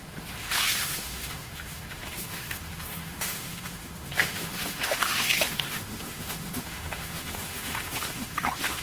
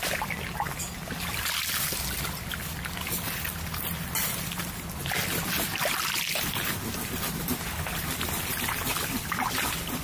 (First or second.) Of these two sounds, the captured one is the second